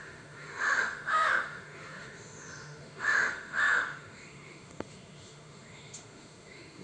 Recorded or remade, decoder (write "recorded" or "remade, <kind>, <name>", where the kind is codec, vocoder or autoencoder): remade, autoencoder, DAC-VAE